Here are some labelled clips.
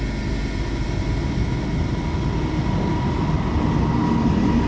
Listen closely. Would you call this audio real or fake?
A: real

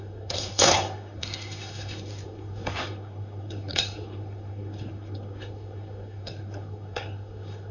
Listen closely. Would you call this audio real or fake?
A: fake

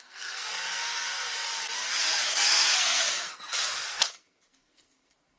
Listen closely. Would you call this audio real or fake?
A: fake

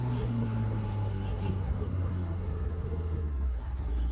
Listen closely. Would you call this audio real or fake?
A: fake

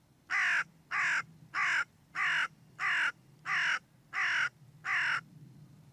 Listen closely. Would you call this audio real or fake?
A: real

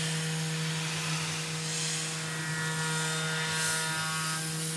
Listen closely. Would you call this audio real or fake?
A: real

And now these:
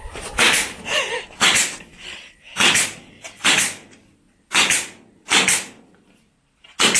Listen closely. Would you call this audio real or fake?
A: real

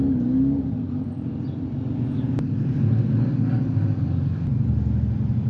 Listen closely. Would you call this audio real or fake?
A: real